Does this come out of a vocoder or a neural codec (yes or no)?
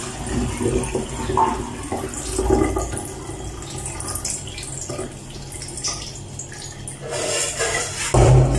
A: no